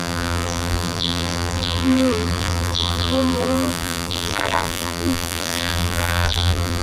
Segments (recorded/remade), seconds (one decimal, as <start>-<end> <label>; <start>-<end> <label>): 0.0-6.8 remade